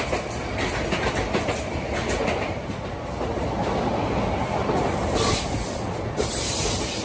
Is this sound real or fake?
real